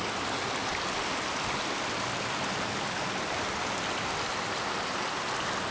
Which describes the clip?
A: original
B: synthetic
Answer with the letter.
A